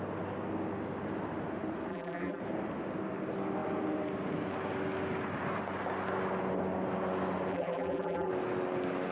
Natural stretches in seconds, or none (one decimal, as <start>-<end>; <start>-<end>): 0.0-1.9; 2.4-7.5; 8.3-9.1